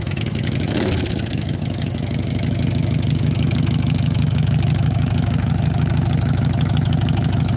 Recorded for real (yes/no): no